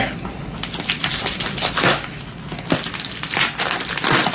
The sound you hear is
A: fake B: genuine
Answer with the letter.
B